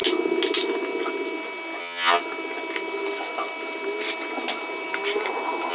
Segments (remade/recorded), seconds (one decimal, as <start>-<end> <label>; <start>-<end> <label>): 0.0-1.8 recorded; 1.8-2.2 remade; 2.2-5.7 recorded